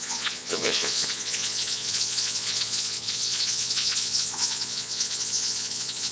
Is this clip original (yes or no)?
no